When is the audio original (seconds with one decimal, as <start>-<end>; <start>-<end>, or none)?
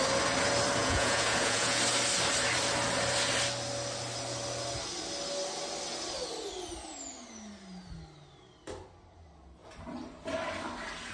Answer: 0.0-0.8; 1.8-11.1